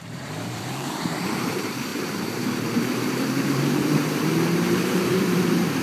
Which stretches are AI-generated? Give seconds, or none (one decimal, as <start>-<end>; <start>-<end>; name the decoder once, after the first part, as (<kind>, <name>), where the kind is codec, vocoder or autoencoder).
0.0-5.8 (vocoder, BigVGAN v2)